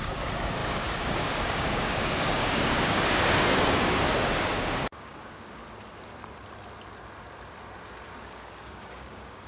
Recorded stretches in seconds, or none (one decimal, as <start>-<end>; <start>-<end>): 5.6-8.2